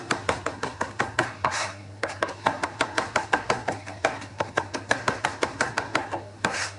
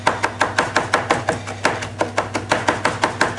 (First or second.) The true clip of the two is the second